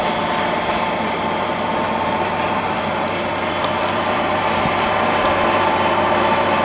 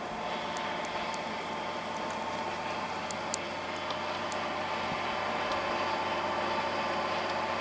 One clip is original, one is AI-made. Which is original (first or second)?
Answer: second